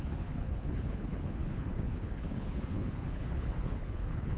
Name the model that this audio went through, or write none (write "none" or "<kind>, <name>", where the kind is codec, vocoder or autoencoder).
codec, HILCodec